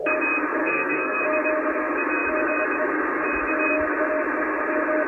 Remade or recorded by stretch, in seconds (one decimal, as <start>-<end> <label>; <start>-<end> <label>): 0.0-0.6 recorded; 0.6-1.2 remade; 1.2-5.1 recorded